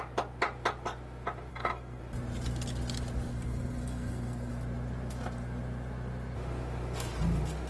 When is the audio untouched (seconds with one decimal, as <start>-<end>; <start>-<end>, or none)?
0.0-1.5; 2.0-3.3; 4.5-7.7

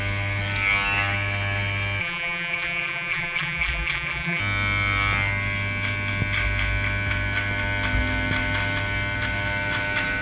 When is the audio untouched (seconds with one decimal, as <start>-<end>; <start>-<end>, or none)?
0.0-2.0; 4.4-10.2